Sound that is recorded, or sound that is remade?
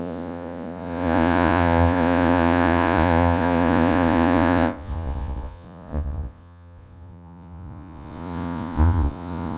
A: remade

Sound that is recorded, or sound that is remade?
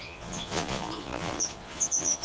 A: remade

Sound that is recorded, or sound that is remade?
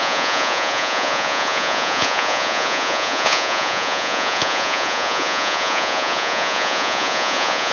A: remade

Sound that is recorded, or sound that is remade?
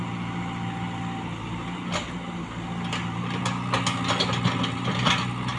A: recorded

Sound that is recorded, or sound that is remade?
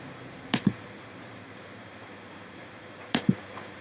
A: remade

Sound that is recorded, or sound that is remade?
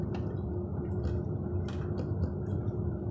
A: recorded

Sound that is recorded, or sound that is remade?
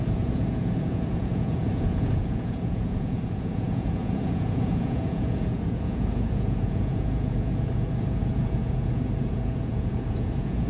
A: remade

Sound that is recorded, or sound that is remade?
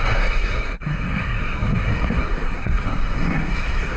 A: remade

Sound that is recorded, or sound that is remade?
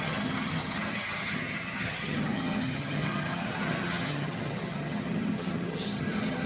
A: remade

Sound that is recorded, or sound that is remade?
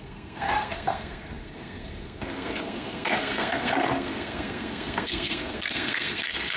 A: remade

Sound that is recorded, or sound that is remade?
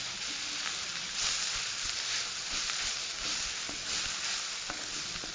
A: recorded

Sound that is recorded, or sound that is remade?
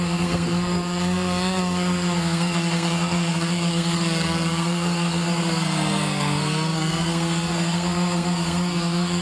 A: remade